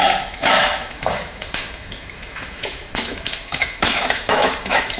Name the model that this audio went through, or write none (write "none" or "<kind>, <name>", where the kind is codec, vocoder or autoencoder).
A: autoencoder, DAC-VAE